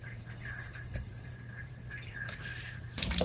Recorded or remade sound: remade